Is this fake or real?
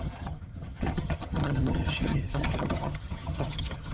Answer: fake